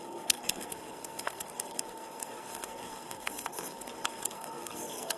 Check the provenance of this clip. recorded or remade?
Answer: remade